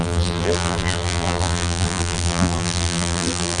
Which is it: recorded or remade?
remade